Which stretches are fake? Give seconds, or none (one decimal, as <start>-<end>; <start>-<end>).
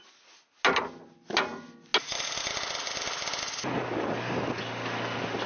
none